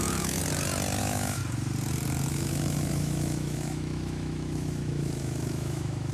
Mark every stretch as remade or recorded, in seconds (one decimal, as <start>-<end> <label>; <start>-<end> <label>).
0.0-0.4 remade; 0.4-1.0 recorded; 1.0-1.4 remade; 1.4-2.3 recorded; 2.3-6.1 remade